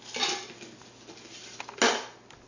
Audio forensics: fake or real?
real